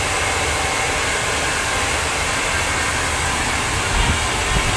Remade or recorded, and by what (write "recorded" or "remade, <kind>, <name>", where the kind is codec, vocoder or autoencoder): recorded